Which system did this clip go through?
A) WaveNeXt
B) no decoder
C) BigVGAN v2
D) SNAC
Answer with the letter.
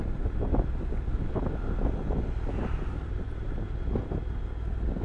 B